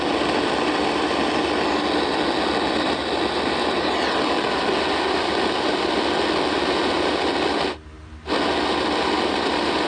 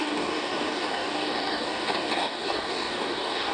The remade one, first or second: second